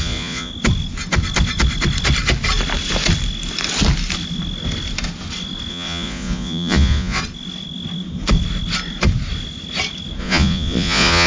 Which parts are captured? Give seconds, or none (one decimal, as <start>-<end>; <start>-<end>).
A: 0.5-5.7; 7.2-10.2